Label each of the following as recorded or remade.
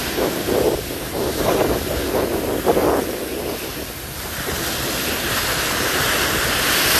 recorded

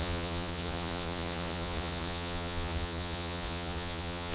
remade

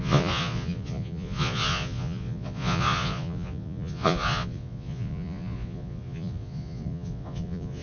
remade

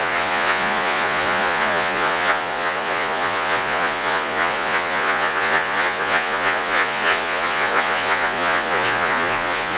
remade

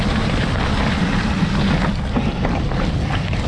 recorded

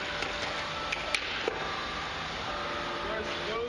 recorded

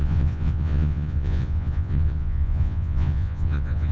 remade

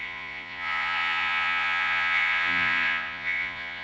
remade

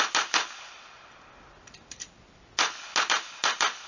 recorded